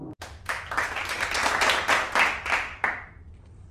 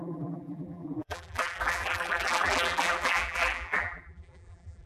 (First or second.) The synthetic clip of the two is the second